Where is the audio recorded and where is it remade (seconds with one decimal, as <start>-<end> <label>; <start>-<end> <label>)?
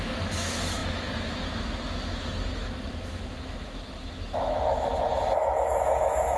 0.0-6.4 remade